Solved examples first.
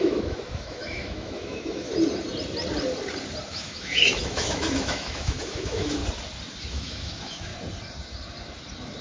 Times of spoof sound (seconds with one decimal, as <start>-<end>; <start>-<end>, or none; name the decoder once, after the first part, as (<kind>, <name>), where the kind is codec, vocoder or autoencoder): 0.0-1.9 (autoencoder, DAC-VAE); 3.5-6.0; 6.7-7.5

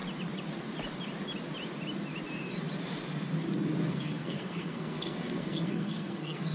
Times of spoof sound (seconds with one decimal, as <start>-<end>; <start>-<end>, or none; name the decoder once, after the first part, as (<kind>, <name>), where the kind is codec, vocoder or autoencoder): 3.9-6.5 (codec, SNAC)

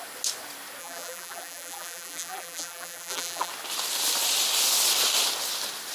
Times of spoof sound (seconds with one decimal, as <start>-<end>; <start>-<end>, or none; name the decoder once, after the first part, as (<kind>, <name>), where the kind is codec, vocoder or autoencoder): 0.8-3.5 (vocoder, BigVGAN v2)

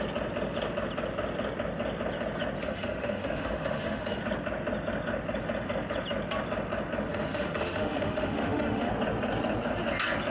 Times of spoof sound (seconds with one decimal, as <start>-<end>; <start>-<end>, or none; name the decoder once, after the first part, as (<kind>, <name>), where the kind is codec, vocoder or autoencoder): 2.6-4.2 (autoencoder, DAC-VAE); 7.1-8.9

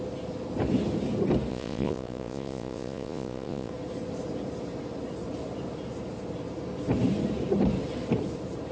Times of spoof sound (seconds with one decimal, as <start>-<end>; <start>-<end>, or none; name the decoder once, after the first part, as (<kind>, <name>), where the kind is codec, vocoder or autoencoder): 1.5-3.7 (vocoder, Vocos)

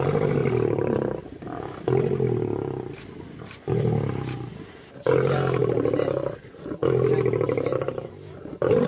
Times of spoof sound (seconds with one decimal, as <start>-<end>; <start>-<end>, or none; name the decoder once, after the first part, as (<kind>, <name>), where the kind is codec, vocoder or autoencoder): none

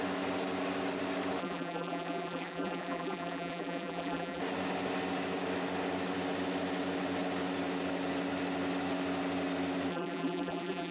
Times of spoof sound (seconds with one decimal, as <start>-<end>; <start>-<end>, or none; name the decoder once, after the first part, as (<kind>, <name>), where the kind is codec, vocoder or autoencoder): 1.4-4.4 (vocoder, BigVGAN v2); 9.9-10.9

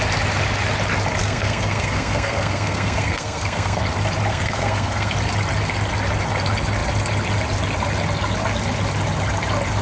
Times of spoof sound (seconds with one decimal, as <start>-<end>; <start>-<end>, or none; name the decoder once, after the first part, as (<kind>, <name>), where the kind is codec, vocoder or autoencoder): 1.2-3.8 (codec, SNAC); 4.3-5.1